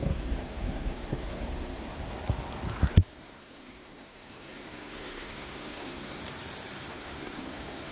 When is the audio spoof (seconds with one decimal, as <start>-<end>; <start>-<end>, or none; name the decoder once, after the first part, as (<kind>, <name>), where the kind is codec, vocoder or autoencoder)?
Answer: 0.0-2.0 (codec, SNAC); 2.9-6.2; 6.9-7.9